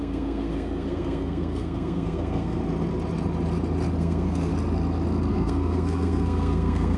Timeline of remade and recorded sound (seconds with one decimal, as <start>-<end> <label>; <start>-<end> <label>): 0.0-2.6 remade; 2.6-4.0 recorded; 4.0-4.5 remade; 4.5-5.3 recorded; 5.3-7.0 remade